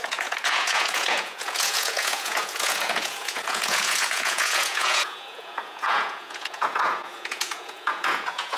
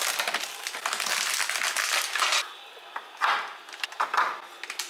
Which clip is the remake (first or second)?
first